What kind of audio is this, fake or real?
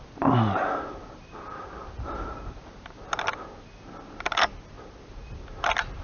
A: real